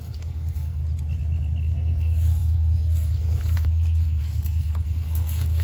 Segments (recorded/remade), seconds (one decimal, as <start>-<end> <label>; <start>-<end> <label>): 0.0-0.8 remade; 0.8-1.6 recorded; 1.6-5.6 remade

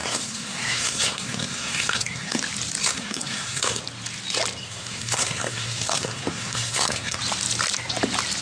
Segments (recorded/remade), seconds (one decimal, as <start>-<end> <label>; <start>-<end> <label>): 0.0-2.4 remade; 2.4-2.8 recorded; 2.8-3.8 remade; 3.8-4.6 recorded; 4.6-7.2 remade; 7.2-8.4 recorded